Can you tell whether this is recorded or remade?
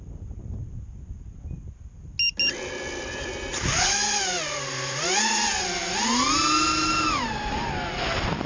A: recorded